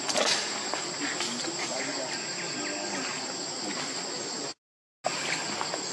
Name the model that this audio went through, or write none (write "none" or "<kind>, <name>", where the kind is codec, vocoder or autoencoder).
none